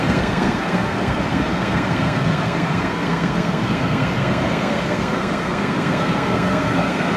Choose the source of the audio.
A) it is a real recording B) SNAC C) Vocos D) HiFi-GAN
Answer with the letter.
B